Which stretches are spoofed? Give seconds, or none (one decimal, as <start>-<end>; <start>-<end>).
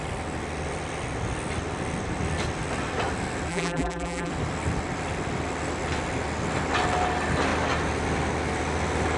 3.5-4.3